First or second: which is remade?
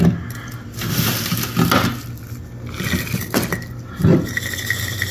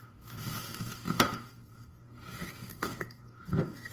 second